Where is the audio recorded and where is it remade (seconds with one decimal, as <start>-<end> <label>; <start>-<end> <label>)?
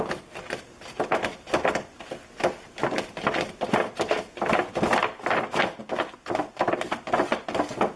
0.0-8.0 recorded